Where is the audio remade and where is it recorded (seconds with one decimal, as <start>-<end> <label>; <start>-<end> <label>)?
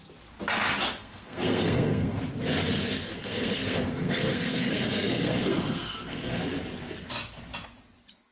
0.0-1.0 recorded; 1.0-2.2 remade; 2.2-3.1 recorded; 3.1-6.4 remade; 6.4-8.3 recorded